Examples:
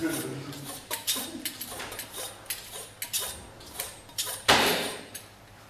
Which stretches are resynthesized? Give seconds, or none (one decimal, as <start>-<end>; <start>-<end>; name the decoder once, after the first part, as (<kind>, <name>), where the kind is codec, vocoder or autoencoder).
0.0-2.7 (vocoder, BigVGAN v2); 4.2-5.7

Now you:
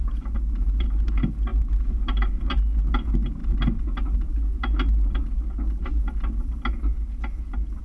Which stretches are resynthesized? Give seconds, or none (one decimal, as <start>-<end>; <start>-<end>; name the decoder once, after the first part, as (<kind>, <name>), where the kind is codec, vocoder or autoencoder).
none

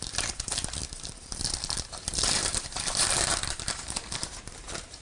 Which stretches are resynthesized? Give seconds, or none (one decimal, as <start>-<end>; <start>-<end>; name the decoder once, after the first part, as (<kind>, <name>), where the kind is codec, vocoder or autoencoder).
0.0-5.0 (vocoder, BigVGAN v2)